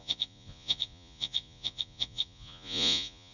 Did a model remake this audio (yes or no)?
yes